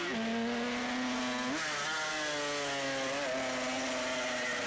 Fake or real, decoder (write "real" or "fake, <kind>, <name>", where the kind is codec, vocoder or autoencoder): real